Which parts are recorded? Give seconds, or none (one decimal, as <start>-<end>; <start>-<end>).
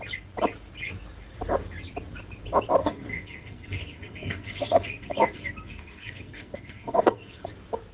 0.0-2.8; 7.5-7.9